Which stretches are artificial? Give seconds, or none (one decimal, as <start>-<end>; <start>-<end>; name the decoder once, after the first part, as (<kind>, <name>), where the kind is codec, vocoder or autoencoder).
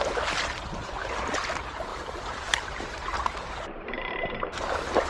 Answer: 1.9-5.1 (vocoder, BigVGAN v2)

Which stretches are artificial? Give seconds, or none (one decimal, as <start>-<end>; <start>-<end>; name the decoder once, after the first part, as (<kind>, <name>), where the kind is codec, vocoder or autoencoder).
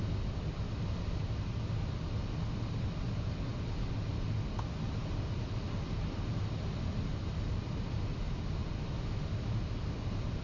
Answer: none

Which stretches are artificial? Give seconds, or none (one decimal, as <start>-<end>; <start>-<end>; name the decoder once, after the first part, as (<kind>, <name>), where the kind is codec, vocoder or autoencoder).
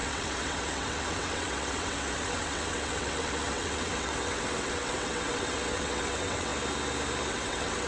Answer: 0.0-6.5 (vocoder, WaveNeXt); 7.3-7.9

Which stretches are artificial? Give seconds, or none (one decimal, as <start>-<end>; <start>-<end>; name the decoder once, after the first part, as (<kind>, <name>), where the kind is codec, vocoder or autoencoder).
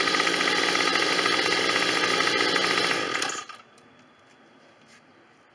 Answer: none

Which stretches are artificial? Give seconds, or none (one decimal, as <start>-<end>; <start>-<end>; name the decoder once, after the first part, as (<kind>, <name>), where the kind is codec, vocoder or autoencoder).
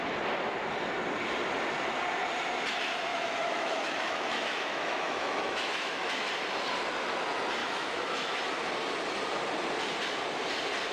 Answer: 3.1-6.3 (autoencoder, DAC-VAE); 7.6-8.4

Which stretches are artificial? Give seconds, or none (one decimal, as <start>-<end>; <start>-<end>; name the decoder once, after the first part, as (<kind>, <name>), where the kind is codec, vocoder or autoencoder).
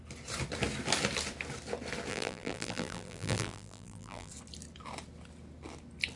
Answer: 2.1-4.3 (vocoder, BigVGAN v2)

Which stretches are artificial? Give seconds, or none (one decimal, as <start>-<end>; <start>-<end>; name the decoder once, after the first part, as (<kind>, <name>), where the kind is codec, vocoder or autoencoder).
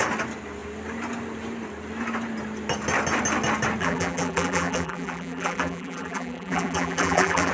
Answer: 3.8-7.5 (vocoder, BigVGAN v2)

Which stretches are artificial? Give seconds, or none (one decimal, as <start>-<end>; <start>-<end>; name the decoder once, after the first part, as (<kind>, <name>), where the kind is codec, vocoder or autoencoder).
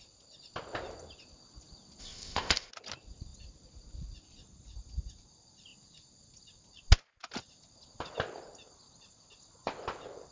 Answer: 2.0-2.7 (codec, ZipCodec)